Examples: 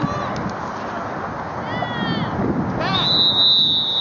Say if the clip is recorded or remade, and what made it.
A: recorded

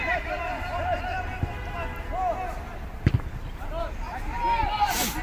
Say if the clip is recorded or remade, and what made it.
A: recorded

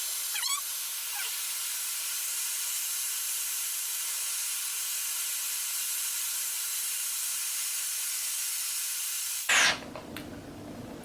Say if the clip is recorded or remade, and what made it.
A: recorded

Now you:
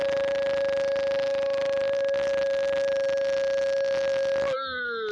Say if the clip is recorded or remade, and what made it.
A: recorded